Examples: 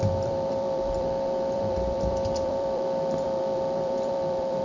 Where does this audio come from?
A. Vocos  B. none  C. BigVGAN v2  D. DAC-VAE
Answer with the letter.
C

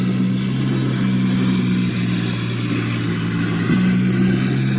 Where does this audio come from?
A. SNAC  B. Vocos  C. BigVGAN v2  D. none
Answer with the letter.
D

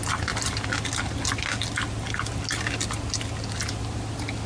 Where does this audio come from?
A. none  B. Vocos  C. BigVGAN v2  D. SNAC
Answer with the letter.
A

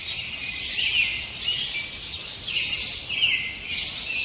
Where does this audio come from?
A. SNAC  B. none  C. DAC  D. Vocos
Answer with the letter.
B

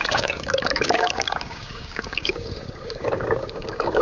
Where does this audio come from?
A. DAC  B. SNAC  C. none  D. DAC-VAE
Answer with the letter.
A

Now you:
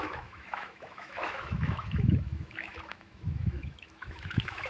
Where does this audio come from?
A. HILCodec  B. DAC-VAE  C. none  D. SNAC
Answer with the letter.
B